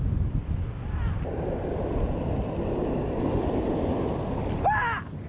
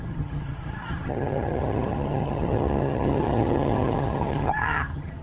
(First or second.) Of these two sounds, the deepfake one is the second